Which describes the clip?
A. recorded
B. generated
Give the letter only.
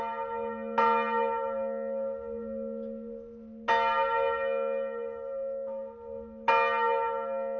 A